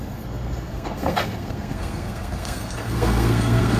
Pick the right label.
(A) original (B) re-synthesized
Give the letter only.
B